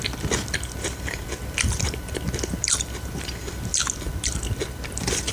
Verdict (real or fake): fake